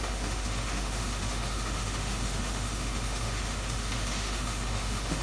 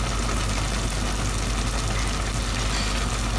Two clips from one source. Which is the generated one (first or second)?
first